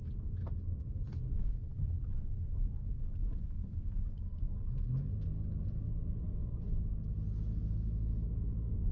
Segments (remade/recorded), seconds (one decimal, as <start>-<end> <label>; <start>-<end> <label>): 0.0-8.9 recorded